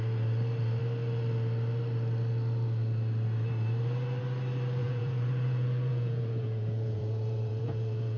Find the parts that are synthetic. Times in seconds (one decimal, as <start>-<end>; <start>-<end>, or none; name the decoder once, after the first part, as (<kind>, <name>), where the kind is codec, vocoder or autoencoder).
4.8-8.2 (vocoder, Vocos)